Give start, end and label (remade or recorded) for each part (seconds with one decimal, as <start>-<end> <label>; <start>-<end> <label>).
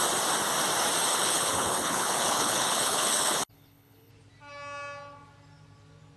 0.0-1.1 recorded; 1.1-4.1 remade; 4.1-6.2 recorded